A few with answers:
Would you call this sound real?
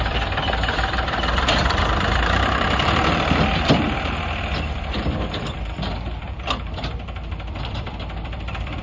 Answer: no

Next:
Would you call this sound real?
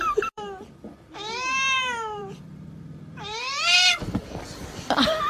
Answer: no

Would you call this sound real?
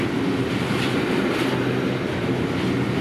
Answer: yes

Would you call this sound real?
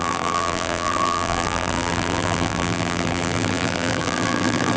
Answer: no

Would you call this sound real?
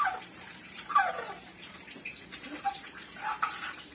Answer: no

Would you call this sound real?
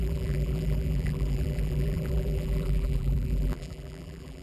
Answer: no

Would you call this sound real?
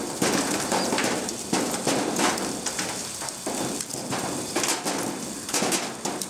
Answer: yes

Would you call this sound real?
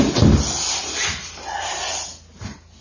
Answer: yes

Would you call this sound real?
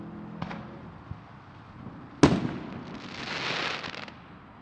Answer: yes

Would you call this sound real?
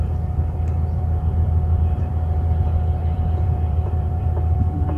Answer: no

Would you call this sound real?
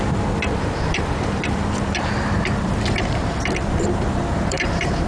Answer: no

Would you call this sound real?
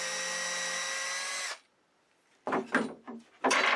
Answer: yes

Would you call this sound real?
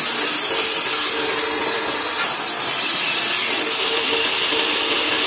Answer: no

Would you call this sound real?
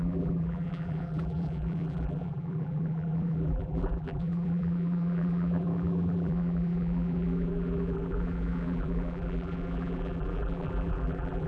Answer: no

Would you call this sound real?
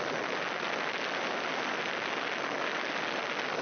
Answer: yes